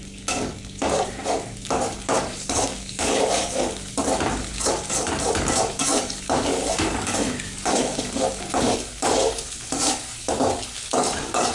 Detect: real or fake fake